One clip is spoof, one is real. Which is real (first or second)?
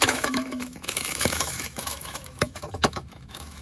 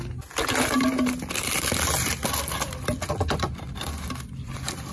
second